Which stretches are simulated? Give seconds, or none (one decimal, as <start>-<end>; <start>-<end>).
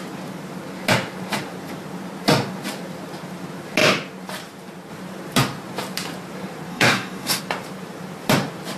6.7-7.4